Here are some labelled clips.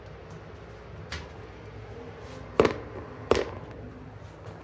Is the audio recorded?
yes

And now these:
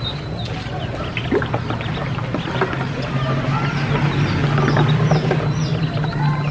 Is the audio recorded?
yes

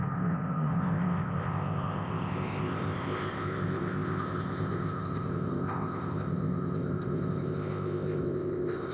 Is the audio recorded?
no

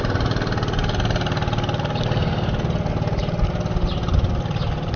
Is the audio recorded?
yes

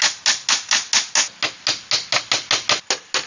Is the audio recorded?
yes